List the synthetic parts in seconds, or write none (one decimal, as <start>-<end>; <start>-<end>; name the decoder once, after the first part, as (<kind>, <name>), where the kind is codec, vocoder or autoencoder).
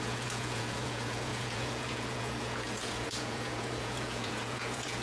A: 0.0-5.0 (vocoder, Vocos)